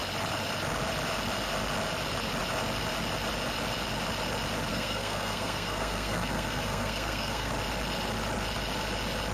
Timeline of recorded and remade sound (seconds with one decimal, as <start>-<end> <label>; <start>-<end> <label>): 0.0-4.7 recorded; 4.7-7.5 remade; 7.5-9.3 recorded